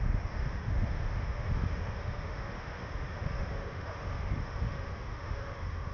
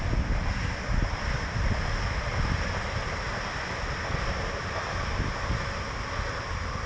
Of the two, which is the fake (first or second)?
first